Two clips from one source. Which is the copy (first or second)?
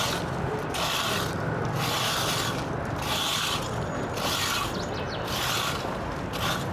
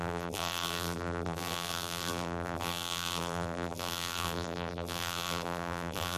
second